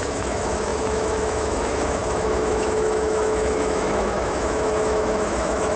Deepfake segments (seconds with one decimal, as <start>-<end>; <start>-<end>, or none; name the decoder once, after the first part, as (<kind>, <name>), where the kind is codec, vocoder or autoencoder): 0.0-5.8 (autoencoder, DAC-VAE)